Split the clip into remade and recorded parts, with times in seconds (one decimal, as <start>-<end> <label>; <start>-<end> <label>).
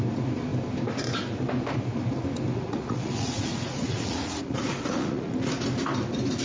0.0-2.5 recorded; 2.5-5.5 remade; 5.5-6.4 recorded